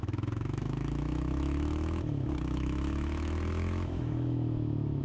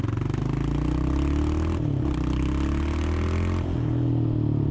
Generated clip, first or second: first